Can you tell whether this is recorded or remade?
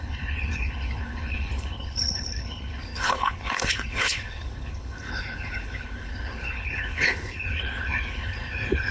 remade